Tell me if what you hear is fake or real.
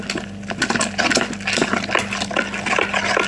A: real